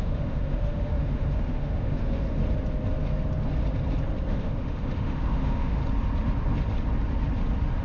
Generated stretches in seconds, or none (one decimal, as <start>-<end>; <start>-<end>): 0.0-2.4; 4.3-5.8